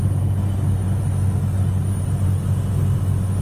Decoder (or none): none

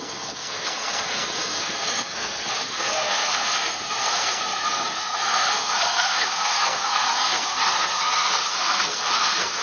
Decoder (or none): codec, SNAC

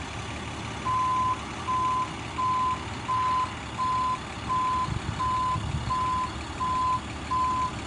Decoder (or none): none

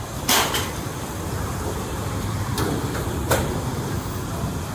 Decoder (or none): vocoder, BigVGAN v2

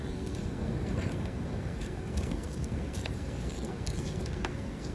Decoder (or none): codec, SNAC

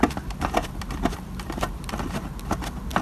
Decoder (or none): none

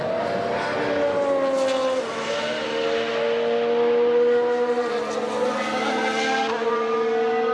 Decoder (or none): none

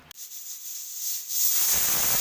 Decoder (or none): none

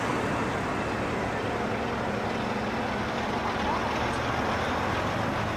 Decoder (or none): none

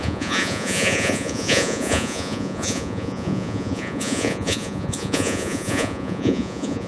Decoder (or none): vocoder, Vocos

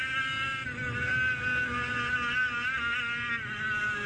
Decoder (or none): none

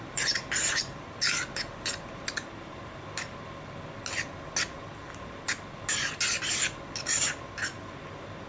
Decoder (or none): none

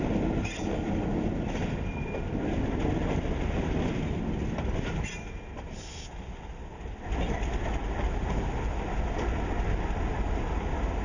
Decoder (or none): none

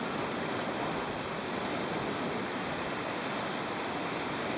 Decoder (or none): none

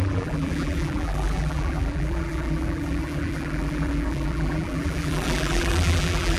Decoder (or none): vocoder, BigVGAN v2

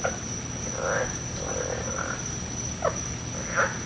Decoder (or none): none